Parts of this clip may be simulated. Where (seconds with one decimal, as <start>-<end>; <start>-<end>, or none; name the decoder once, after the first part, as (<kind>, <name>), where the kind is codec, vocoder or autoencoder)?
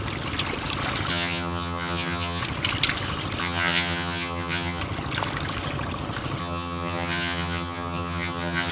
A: 1.1-2.4 (vocoder, HiFi-GAN); 3.4-4.8; 6.4-8.7